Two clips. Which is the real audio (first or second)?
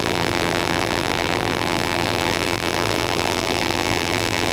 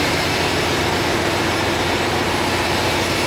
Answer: second